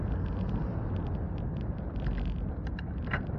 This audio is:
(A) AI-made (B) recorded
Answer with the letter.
B